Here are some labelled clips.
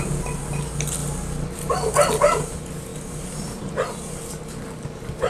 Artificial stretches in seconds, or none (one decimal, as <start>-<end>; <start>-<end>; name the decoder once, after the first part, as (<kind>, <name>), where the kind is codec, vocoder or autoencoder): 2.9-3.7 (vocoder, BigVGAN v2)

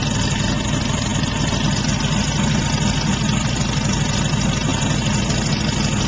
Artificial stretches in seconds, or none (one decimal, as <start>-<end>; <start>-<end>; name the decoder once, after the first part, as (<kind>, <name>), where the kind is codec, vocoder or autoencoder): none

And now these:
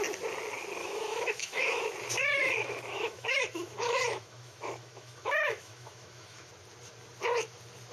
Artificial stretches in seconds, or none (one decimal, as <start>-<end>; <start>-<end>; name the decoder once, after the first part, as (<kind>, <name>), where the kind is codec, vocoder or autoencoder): 0.8-1.8 (autoencoder, DAC-VAE); 2.2-6.5

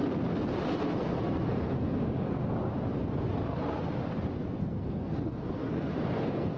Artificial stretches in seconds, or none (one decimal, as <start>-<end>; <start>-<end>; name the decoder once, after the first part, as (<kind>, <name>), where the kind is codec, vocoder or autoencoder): 0.7-2.3 (codec, SNAC); 4.6-6.6

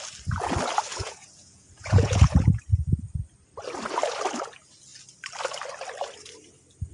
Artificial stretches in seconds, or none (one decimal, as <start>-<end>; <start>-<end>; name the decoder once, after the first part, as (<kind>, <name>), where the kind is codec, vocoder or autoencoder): 0.9-2.6 (vocoder, Vocos)